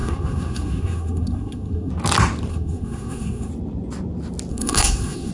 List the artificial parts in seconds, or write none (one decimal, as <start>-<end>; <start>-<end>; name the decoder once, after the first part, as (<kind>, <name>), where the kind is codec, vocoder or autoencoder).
0.0-1.9 (codec, SNAC); 2.5-3.5; 4.5-5.3